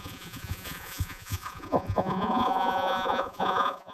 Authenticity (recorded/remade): remade